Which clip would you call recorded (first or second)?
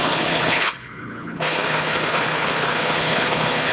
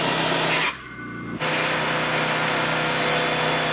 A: second